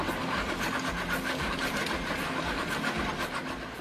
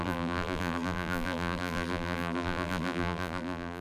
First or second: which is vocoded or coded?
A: second